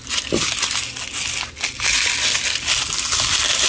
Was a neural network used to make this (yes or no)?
no